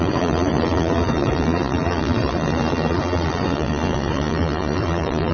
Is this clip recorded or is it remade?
remade